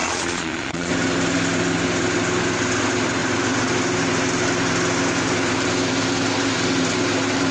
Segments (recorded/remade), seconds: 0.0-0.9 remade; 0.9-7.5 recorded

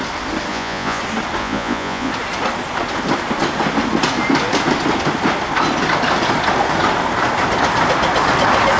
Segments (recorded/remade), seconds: 0.0-0.5 recorded; 0.5-1.0 remade; 1.0-1.4 recorded; 1.4-2.1 remade; 2.1-8.8 recorded

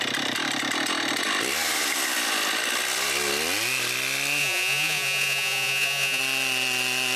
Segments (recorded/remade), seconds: 0.0-4.4 recorded; 4.4-6.2 remade; 6.2-7.2 recorded

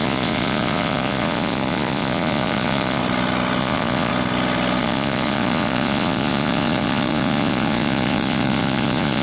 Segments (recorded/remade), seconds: 0.0-3.0 remade; 3.0-3.6 recorded; 3.6-4.1 remade; 4.1-4.8 recorded; 4.8-9.2 remade

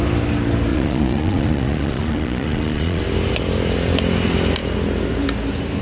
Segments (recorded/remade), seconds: 0.0-0.7 recorded; 0.7-3.0 remade; 3.0-5.8 recorded

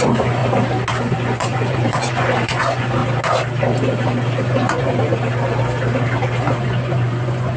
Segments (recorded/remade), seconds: 0.0-0.4 remade; 0.4-0.9 recorded; 0.9-3.0 remade; 3.0-4.5 recorded; 4.5-5.0 remade; 5.0-6.6 recorded; 6.6-7.6 remade

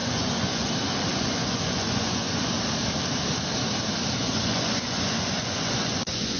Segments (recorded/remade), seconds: 0.0-0.7 remade; 0.7-1.1 recorded; 1.1-2.5 remade; 2.5-4.2 recorded; 4.2-6.4 remade

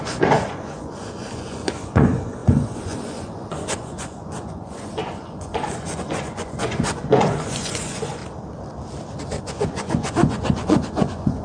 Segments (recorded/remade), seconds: 0.0-8.2 remade; 8.2-9.4 recorded; 9.4-11.4 remade